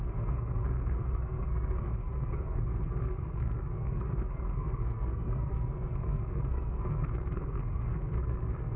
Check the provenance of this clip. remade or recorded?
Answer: remade